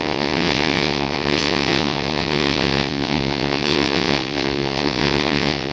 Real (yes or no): no